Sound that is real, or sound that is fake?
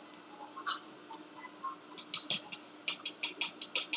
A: real